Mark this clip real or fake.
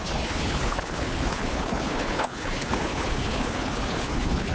fake